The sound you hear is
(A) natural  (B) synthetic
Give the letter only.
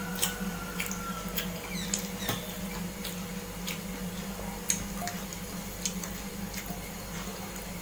A